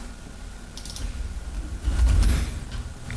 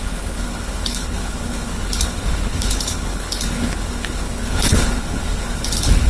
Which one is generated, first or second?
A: second